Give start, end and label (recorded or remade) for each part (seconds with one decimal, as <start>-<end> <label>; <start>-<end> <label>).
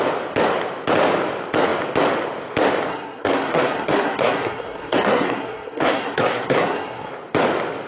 0.0-2.9 recorded; 2.9-7.1 remade; 7.1-7.9 recorded